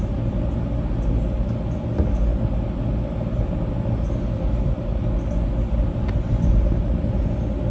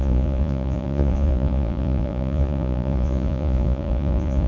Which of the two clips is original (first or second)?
first